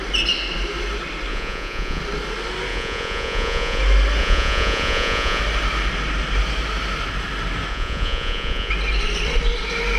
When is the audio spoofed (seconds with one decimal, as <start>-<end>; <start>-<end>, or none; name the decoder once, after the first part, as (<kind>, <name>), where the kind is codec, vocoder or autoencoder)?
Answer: 1.3-2.0 (vocoder, Vocos); 2.7-3.8; 4.2-5.4; 7.7-8.7